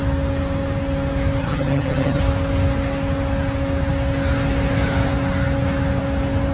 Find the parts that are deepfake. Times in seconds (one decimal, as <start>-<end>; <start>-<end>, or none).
1.4-2.2